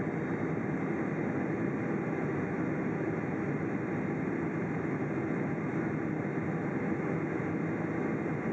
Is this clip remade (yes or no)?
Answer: no